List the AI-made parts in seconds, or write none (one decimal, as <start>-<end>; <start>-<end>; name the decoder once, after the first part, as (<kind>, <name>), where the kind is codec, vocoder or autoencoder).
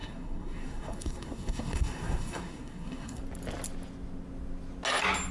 0.0-3.2 (codec, SNAC)